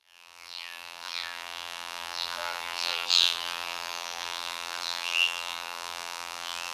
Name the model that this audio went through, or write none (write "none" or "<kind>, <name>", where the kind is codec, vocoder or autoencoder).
vocoder, BigVGAN v2